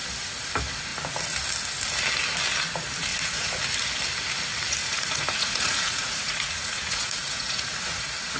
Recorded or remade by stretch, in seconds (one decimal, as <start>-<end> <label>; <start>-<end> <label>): 0.0-3.1 recorded; 3.1-3.6 remade; 3.6-4.8 recorded; 4.8-8.0 remade; 8.0-8.4 recorded